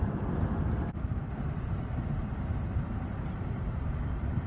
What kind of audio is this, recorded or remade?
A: remade